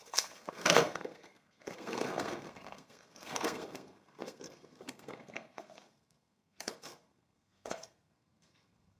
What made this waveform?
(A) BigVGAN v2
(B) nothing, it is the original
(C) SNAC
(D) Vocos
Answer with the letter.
C